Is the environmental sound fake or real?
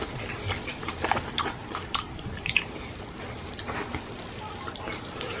real